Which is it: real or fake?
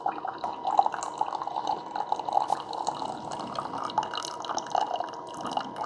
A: real